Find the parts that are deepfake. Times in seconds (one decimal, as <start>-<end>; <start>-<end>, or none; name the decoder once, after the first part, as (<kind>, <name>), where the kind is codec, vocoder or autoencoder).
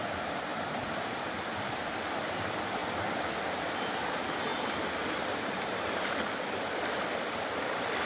0.5-1.2 (vocoder, BigVGAN v2); 4.5-6.9